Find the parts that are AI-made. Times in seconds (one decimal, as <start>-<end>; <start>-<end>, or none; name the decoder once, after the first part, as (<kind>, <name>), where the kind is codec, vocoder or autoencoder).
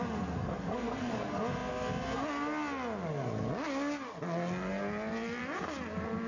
0.4-1.1 (codec, SNAC)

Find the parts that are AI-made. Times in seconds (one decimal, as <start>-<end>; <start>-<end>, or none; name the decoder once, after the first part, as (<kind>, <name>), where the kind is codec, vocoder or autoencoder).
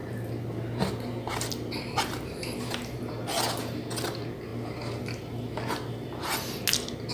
none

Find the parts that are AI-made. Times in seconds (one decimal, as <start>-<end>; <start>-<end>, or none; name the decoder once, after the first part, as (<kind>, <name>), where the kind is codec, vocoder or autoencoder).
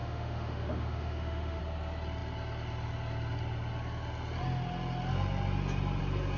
0.0-1.6 (autoencoder, DAC-VAE)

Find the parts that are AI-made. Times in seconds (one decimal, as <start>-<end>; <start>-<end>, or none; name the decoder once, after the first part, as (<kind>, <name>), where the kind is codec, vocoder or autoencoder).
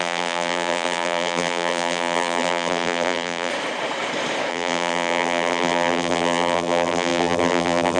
0.0-3.5 (vocoder, BigVGAN v2); 4.5-8.0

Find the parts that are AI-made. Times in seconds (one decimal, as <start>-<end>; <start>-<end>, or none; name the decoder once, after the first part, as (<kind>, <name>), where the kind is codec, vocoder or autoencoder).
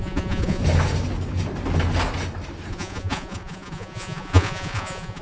0.0-0.6 (vocoder, Vocos); 2.7-5.2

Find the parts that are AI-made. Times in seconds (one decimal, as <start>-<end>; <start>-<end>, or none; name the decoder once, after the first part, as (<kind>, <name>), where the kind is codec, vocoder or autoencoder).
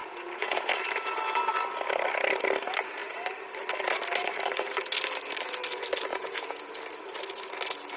0.0-0.7 (vocoder, Vocos); 6.1-6.7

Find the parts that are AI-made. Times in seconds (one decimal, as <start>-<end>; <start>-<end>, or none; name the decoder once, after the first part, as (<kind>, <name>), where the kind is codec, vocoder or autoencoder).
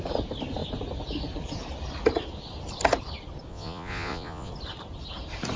3.5-4.5 (vocoder, Vocos)